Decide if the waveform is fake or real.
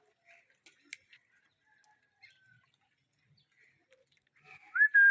real